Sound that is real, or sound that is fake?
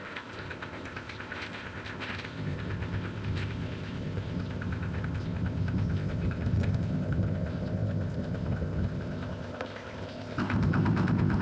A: fake